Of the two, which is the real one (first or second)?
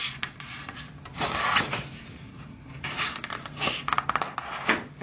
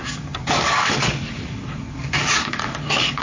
first